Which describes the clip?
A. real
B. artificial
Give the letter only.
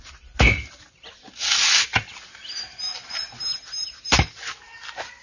A